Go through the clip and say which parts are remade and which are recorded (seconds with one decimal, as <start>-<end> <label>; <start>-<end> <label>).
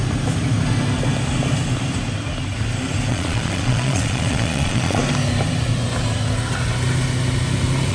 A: 0.0-3.1 recorded; 3.1-5.0 remade; 5.0-7.9 recorded